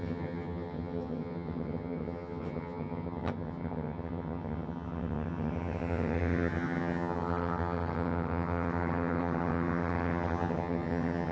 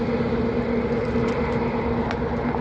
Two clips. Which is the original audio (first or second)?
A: second